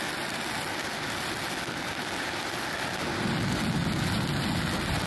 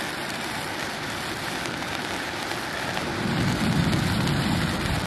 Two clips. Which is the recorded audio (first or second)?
first